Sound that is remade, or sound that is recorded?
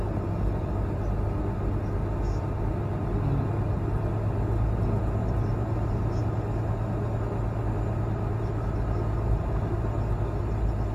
recorded